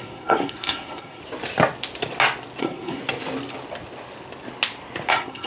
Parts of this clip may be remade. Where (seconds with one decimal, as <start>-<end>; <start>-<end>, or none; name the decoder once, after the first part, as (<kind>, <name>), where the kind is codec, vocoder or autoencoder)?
0.0-1.2 (codec, SNAC); 2.6-3.0; 5.1-5.5